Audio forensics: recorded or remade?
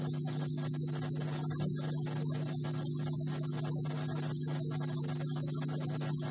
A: recorded